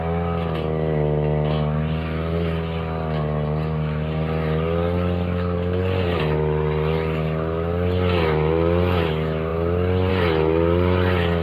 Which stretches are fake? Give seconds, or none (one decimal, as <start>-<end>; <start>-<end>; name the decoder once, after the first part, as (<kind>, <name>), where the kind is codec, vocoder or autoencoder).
none